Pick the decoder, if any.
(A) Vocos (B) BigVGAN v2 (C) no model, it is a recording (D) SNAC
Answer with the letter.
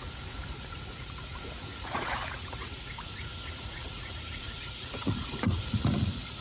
A